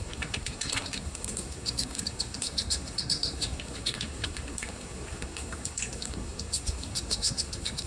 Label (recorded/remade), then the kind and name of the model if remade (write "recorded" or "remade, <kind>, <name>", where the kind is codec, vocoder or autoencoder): remade, codec, SNAC